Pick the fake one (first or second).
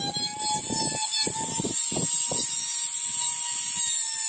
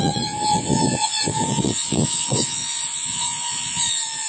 second